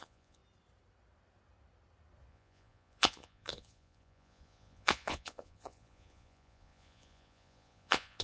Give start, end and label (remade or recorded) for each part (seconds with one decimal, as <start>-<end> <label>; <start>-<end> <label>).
0.0-0.4 remade; 0.4-2.3 recorded; 2.3-8.2 remade